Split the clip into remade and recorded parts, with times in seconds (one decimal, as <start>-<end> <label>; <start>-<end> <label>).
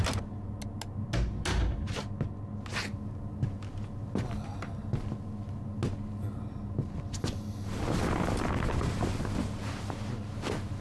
0.0-10.8 recorded